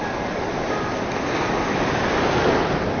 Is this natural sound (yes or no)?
yes